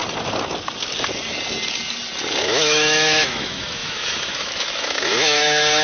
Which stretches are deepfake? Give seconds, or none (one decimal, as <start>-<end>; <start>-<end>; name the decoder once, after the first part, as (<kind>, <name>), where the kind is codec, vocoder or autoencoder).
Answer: 2.4-5.8 (autoencoder, DAC-VAE)

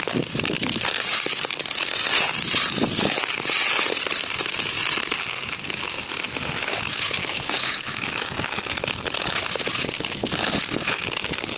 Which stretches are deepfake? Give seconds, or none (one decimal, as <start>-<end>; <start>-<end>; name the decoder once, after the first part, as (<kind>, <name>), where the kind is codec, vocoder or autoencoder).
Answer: 7.2-8.2 (autoencoder, DAC-VAE)

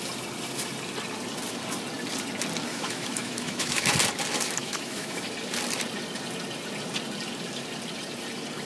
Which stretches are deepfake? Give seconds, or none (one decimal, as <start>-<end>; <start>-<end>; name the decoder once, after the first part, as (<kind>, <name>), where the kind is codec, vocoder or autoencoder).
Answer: 2.7-3.9 (autoencoder, DAC-VAE); 4.6-5.3

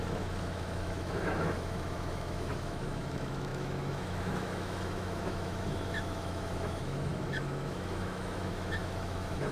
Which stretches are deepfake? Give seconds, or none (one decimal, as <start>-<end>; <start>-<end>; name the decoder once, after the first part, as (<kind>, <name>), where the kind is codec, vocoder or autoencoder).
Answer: 0.0-9.5 (autoencoder, DAC-VAE)

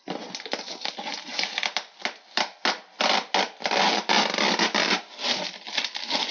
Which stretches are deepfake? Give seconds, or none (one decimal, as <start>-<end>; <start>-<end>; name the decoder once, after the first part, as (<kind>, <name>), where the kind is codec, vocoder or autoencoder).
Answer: none

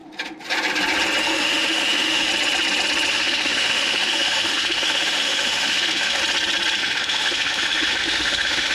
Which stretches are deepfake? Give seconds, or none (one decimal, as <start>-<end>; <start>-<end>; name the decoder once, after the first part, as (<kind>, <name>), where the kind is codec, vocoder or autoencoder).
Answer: 1.2-2.3 (autoencoder, DAC-VAE); 3.1-6.2; 6.8-8.7